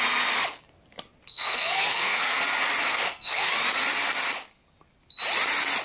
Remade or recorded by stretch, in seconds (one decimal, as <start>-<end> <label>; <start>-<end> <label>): 0.0-1.3 recorded; 1.3-2.4 remade; 2.4-2.9 recorded; 2.9-3.5 remade; 3.5-5.8 recorded